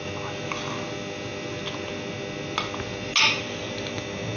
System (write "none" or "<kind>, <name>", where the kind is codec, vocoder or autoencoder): none